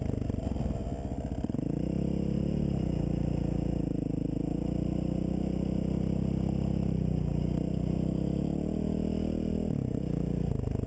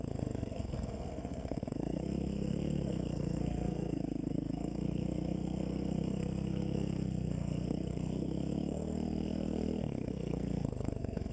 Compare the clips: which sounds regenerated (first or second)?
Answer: second